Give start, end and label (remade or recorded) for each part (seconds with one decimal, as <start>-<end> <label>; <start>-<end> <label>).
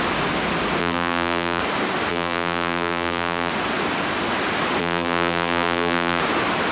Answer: 0.0-0.8 recorded; 0.8-1.6 remade; 1.6-2.1 recorded; 2.1-3.5 remade; 3.5-4.8 recorded; 4.8-6.2 remade; 6.2-6.7 recorded